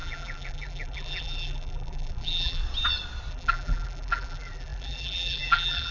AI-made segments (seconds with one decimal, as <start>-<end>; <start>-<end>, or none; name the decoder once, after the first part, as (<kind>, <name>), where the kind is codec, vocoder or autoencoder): 0.0-2.6 (vocoder, BigVGAN v2); 3.3-5.9